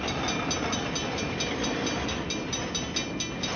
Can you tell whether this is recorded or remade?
recorded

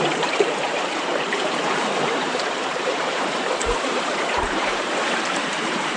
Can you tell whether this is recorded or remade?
remade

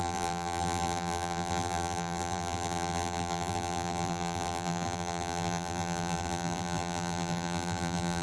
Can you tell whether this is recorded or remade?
remade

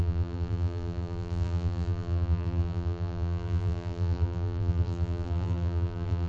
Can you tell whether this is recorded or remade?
remade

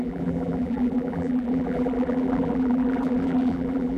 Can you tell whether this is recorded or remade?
remade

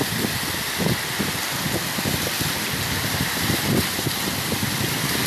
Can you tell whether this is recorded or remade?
recorded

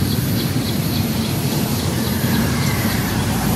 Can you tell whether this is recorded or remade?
remade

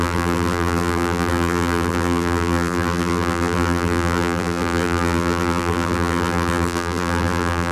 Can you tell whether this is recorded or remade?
remade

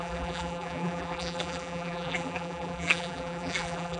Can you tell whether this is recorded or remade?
remade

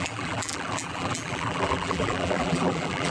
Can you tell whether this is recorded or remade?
remade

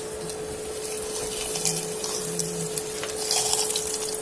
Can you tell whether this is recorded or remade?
recorded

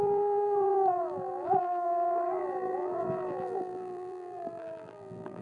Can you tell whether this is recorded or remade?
remade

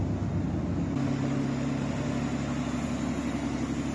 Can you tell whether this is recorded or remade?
recorded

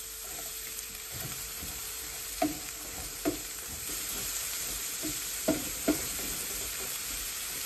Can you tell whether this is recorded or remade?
remade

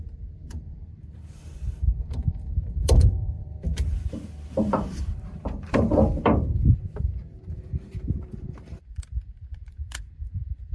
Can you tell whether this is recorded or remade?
remade